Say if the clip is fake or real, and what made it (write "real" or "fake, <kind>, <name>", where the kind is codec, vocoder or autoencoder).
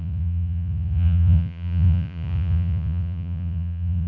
fake, vocoder, Vocos